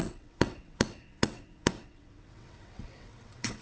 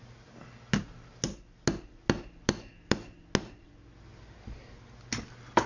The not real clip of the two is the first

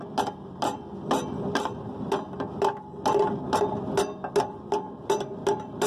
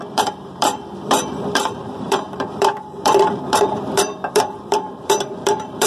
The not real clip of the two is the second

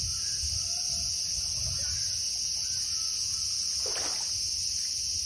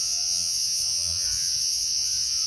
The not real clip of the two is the second